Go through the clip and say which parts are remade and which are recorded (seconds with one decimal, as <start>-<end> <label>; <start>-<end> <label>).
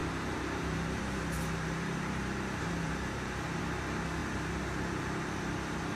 0.0-3.6 remade; 3.6-4.2 recorded; 4.2-5.0 remade; 5.0-6.0 recorded